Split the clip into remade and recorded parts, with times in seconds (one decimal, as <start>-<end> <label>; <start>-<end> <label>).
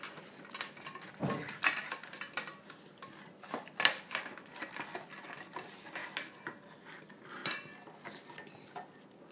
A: 0.0-9.3 recorded